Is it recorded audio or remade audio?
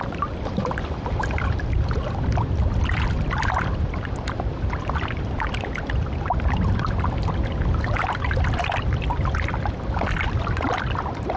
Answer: remade